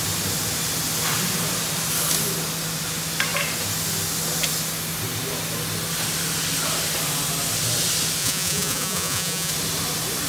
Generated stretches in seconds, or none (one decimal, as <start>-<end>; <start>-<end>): 8.2-9.5